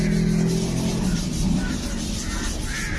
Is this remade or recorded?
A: recorded